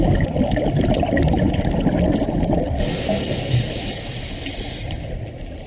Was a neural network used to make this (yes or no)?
no